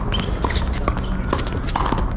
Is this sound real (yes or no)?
yes